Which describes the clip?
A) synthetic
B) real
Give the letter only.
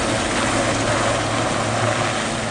B